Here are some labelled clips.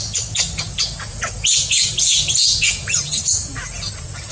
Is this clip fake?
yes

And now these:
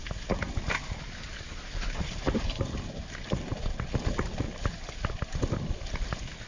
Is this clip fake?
no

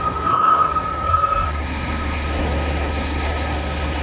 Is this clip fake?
yes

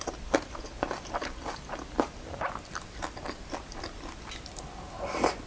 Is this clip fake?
no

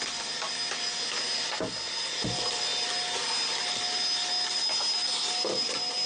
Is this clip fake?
no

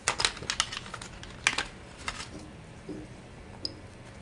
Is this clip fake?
no